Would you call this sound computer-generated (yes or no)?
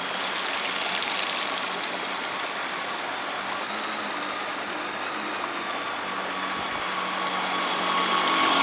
no